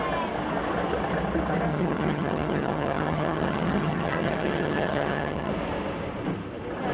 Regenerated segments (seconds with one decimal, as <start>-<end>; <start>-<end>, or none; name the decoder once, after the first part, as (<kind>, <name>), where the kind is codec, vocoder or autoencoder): 1.7-5.5 (vocoder, HiFi-GAN)